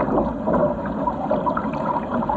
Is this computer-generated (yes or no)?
yes